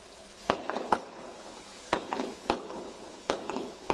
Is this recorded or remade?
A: remade